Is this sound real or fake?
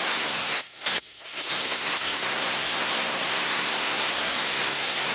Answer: fake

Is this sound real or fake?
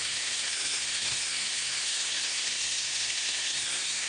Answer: fake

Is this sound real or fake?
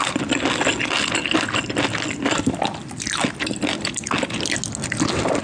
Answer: real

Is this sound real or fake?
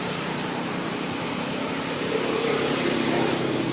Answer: fake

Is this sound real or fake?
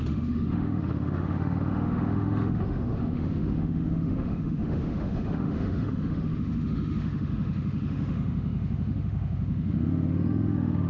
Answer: fake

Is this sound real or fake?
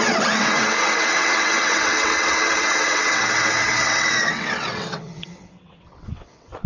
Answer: fake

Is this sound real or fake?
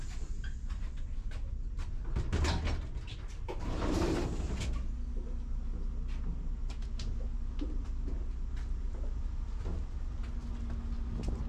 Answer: real